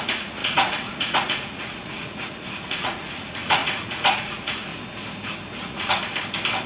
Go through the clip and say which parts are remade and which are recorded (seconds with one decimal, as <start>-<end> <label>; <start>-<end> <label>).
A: 0.0-4.7 remade; 4.7-5.6 recorded; 5.6-6.1 remade; 6.1-6.7 recorded